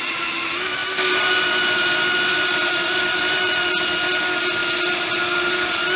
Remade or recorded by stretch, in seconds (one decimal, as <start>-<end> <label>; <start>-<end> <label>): 0.0-0.8 recorded; 0.8-3.8 remade; 3.8-6.0 recorded